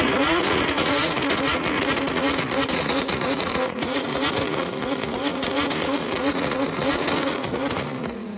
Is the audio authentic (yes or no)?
no